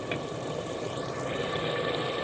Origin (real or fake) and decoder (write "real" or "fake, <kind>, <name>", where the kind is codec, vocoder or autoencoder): real